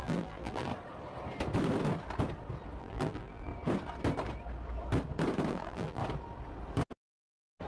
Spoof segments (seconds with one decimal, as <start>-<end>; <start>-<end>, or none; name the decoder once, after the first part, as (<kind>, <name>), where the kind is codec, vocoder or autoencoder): 0.0-0.7 (vocoder, BigVGAN v2); 2.8-3.5; 5.5-6.0